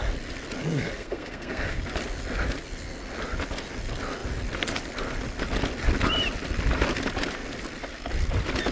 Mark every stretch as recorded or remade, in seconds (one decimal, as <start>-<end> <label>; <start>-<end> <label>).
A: 0.0-0.6 recorded; 0.6-1.8 remade; 1.8-8.7 recorded